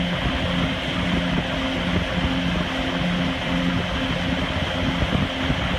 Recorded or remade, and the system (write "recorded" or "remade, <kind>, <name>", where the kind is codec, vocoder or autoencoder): recorded